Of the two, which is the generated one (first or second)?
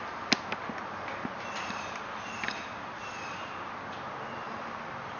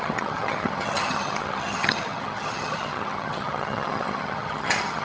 second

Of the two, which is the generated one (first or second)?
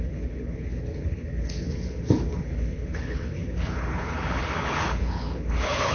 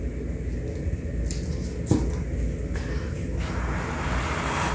first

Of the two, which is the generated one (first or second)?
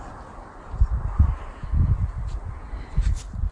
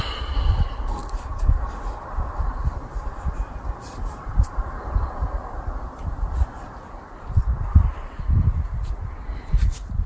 second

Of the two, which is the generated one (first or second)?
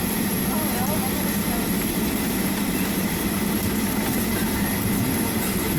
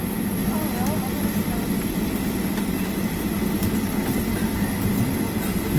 first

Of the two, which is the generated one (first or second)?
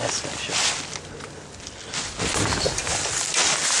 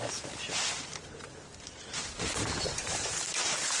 second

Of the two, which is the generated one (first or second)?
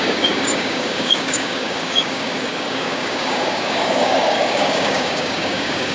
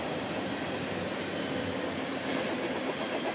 first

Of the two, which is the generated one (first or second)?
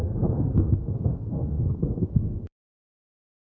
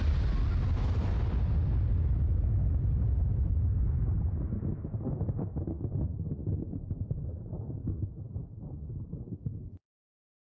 first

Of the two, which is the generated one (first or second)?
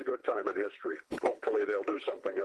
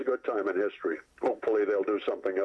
first